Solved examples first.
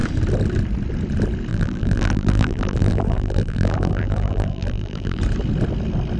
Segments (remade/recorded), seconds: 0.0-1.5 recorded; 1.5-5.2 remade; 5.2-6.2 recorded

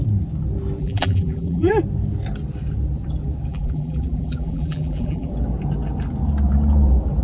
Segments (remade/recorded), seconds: 0.0-0.8 recorded; 0.8-1.7 remade; 1.7-3.5 recorded; 3.5-5.3 remade; 5.3-7.2 recorded